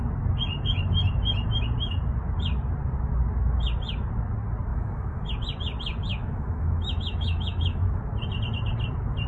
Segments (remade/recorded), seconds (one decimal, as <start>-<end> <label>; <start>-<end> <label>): 0.0-4.7 recorded; 4.7-5.3 remade; 5.3-6.1 recorded; 6.1-8.0 remade; 8.0-9.3 recorded